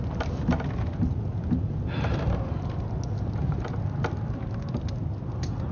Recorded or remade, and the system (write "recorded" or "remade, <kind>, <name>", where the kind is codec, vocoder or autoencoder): recorded